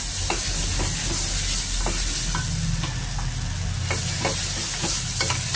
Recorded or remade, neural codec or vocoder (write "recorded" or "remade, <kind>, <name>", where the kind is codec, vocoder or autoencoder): recorded